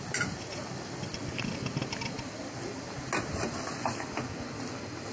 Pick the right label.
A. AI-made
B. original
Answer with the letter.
B